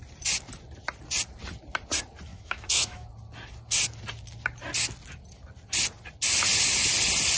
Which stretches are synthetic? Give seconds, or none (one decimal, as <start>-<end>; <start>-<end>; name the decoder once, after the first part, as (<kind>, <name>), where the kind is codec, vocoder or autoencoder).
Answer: 2.3-3.1 (autoencoder, DAC-VAE)